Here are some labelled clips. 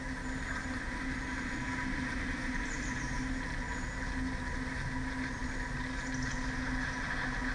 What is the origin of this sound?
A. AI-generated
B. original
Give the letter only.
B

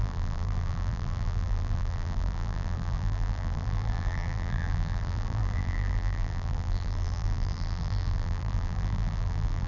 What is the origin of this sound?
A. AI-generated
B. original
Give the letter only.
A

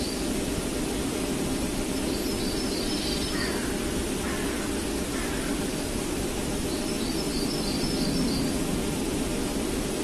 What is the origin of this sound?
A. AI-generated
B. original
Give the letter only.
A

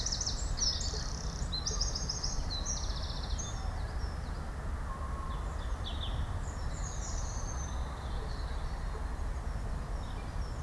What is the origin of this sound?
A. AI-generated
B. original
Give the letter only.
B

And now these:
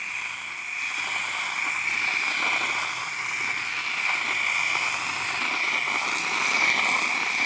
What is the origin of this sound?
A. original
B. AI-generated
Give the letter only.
A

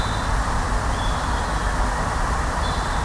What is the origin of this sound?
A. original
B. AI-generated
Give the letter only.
A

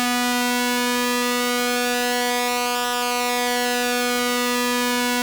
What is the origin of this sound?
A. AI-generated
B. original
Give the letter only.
B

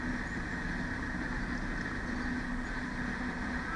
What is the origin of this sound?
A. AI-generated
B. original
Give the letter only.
B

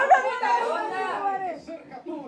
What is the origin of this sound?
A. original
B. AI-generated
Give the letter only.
A